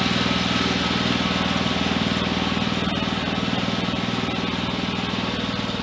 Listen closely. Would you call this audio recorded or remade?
recorded